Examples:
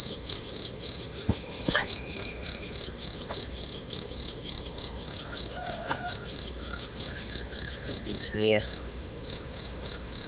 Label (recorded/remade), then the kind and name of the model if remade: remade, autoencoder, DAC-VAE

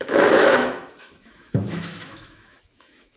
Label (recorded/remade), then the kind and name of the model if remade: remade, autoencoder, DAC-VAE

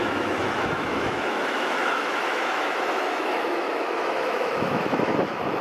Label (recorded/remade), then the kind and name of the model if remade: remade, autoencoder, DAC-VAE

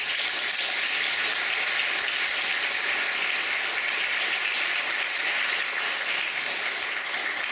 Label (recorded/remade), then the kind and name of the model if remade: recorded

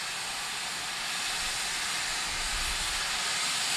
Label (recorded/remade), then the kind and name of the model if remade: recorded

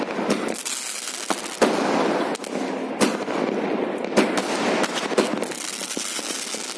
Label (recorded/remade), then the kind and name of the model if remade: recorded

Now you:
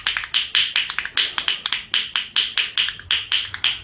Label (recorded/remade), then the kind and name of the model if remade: recorded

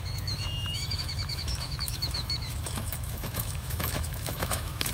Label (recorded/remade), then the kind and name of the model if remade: remade, autoencoder, DAC-VAE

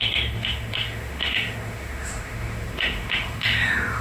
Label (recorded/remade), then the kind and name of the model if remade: remade, autoencoder, DAC-VAE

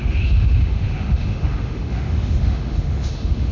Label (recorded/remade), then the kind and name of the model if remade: remade, autoencoder, DAC-VAE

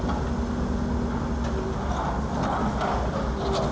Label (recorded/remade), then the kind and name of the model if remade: recorded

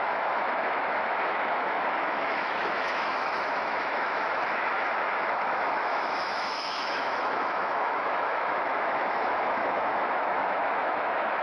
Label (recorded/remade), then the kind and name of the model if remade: remade, autoencoder, DAC-VAE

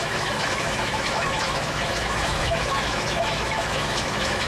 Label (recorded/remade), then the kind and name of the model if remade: remade, autoencoder, DAC-VAE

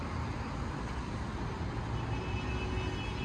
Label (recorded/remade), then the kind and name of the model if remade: recorded